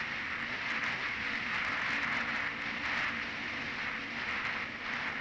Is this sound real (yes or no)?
yes